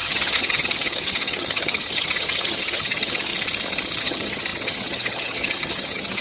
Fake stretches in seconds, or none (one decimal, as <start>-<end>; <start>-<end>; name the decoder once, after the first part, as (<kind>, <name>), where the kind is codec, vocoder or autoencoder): 0.0-3.3 (vocoder, HiFi-GAN); 4.0-6.2